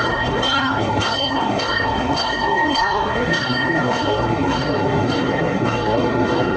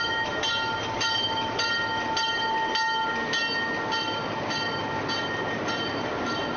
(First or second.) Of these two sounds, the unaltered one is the second